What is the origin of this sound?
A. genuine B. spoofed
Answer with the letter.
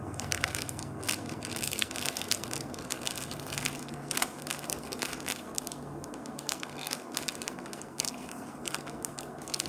B